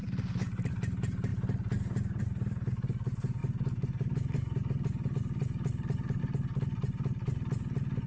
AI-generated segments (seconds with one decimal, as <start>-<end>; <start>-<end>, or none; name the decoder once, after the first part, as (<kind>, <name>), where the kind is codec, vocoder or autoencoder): none